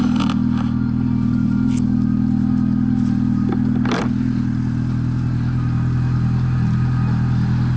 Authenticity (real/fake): real